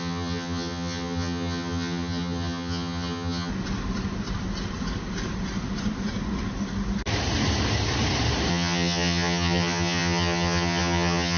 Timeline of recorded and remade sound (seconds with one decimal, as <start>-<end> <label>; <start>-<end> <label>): 0.0-3.5 remade; 3.5-8.5 recorded; 8.5-11.4 remade